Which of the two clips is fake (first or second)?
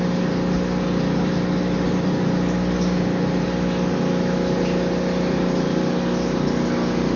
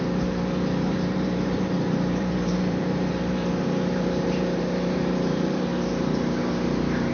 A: second